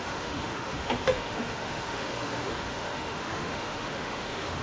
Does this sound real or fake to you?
fake